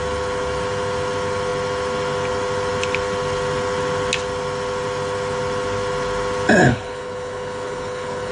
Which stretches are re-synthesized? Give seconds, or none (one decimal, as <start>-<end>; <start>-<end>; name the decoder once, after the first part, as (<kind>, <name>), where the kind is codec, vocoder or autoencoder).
6.6-8.3 (codec, HILCodec)